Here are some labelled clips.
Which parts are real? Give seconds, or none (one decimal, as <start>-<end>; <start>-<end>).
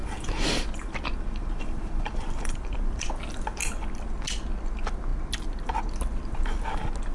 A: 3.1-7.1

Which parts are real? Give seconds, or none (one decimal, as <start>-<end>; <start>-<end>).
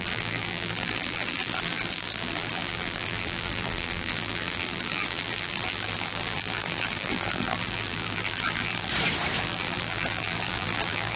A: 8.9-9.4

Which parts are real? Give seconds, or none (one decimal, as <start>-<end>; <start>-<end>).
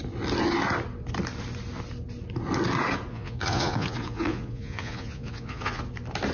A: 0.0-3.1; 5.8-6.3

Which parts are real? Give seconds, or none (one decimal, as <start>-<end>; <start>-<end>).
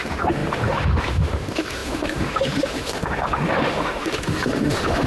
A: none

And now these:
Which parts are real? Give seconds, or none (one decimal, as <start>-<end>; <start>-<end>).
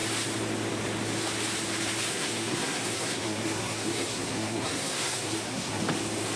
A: 0.0-2.1; 5.8-6.4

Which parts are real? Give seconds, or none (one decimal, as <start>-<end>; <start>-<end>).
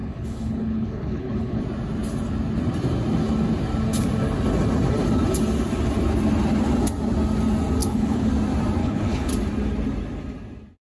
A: 1.6-7.8; 8.3-8.8; 9.3-10.8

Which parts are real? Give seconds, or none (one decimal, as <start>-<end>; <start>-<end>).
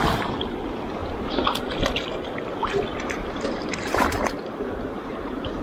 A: 0.0-1.0; 1.6-2.9